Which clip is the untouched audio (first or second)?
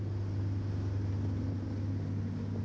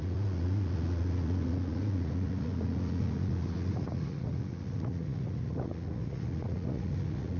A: first